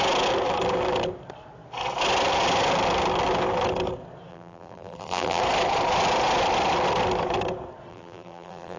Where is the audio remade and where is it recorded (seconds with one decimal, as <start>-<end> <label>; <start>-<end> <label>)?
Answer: 0.0-4.3 recorded; 4.3-5.4 remade; 5.4-7.9 recorded; 7.9-8.8 remade